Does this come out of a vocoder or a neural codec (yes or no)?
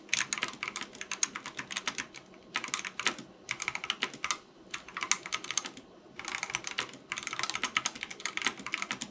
no